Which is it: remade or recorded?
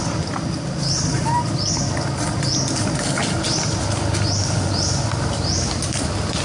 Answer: recorded